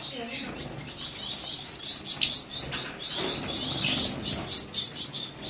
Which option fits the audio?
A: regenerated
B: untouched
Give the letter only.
B